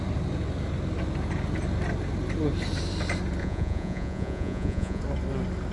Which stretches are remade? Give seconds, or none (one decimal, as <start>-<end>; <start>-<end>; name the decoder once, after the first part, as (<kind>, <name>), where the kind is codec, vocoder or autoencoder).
3.4-5.0 (vocoder, Vocos)